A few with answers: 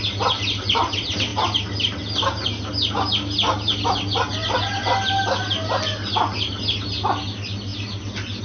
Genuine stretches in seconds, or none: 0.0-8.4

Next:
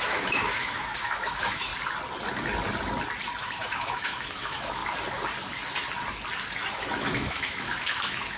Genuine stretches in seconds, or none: 1.7-3.4; 4.8-6.7

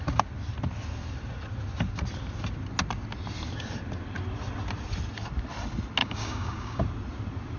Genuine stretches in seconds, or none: 0.0-6.0; 6.8-7.6

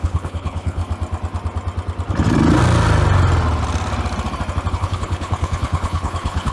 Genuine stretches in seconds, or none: 0.8-4.7

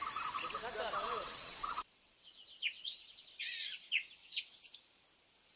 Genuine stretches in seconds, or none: 0.0-1.0; 4.4-5.6

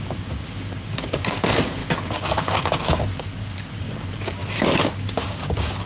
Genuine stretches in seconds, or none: 4.4-4.9

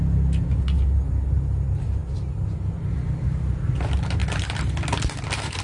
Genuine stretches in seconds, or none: 0.0-5.6